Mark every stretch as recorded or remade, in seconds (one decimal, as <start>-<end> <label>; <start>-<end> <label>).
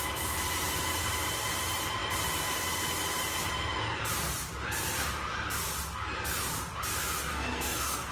0.0-7.3 recorded; 7.3-8.1 remade